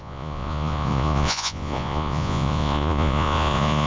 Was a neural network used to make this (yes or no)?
yes